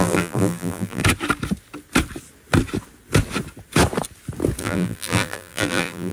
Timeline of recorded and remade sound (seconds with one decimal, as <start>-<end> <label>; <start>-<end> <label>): 0.0-1.0 remade; 1.0-4.6 recorded; 4.6-6.1 remade